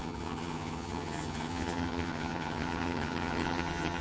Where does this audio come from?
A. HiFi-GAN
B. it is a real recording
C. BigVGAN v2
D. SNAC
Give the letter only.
A